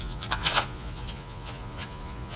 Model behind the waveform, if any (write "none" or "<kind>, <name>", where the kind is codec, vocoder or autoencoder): vocoder, Vocos